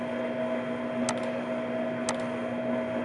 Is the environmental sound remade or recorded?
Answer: recorded